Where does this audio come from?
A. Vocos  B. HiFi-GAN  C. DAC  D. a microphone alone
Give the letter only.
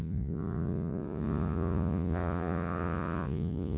A